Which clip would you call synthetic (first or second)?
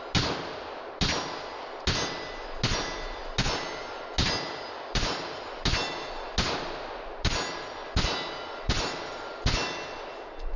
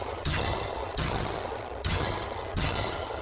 second